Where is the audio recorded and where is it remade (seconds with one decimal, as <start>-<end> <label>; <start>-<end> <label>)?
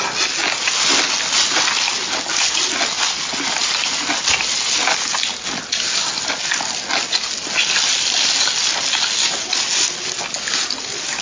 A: 0.0-11.2 recorded